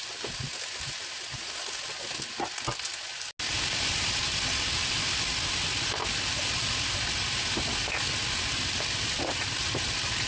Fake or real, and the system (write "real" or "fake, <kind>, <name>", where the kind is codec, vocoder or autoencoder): real